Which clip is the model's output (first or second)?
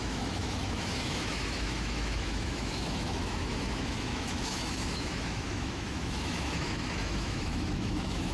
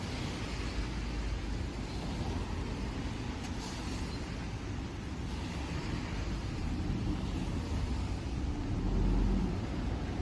first